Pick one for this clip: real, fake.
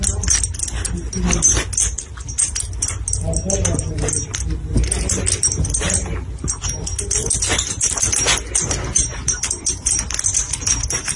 real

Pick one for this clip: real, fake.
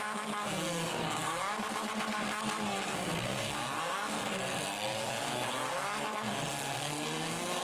fake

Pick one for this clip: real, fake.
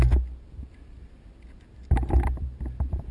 real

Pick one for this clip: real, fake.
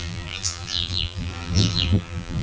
fake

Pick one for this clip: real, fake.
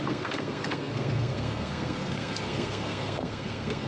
fake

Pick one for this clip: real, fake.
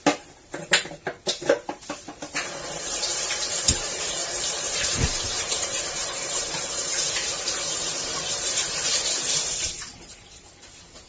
fake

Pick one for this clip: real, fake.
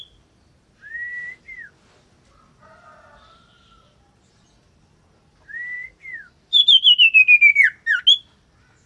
real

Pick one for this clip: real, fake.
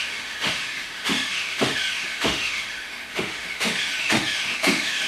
fake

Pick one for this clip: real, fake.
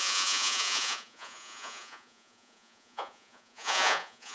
fake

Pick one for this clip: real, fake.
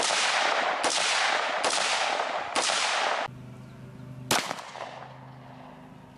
real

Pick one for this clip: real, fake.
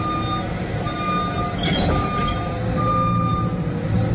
real